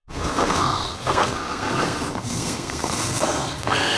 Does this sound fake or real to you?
fake